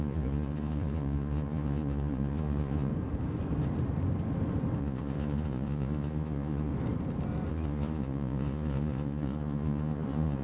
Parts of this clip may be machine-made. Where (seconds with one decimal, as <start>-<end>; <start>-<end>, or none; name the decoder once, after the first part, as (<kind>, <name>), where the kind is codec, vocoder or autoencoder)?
0.0-2.9 (vocoder, Vocos); 4.8-6.7; 7.5-10.4